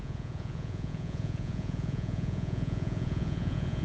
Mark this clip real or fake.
fake